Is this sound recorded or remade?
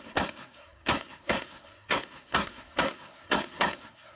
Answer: remade